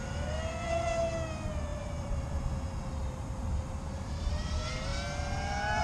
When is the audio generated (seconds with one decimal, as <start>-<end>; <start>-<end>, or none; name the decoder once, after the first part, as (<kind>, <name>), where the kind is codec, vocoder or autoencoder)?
1.7-2.4 (vocoder, BigVGAN v2); 3.0-4.5